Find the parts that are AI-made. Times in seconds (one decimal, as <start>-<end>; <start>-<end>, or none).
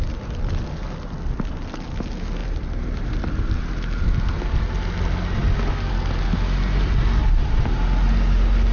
2.4-3.7; 7.2-7.8